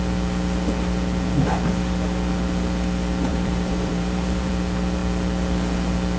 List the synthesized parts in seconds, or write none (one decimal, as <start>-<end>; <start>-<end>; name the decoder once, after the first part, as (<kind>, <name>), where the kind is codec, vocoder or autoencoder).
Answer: 3.3-4.5 (vocoder, BigVGAN v2)